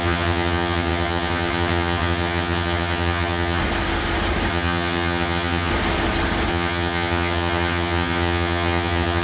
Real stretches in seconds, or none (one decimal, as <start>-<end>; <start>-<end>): 3.6-4.5; 5.7-6.5